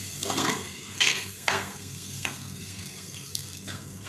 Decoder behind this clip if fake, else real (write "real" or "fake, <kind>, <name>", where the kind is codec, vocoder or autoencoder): fake, codec, SNAC